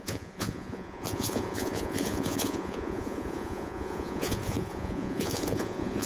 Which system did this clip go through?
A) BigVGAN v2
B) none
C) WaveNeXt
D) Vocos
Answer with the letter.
D